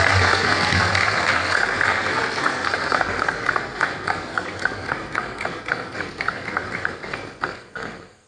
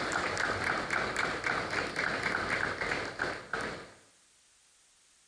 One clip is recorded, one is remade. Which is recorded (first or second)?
second